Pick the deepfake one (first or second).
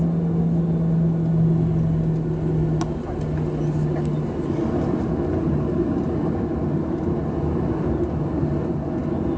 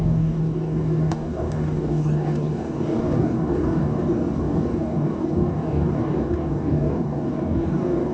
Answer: second